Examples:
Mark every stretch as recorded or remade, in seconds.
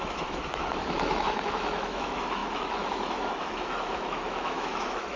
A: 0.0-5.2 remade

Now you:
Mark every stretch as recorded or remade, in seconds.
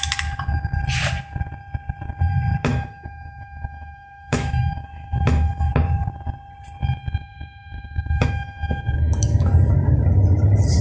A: 0.0-2.7 recorded; 2.7-5.7 remade; 5.7-7.2 recorded; 7.2-9.5 remade; 9.5-10.8 recorded